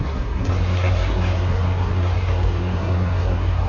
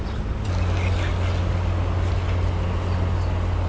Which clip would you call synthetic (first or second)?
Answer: first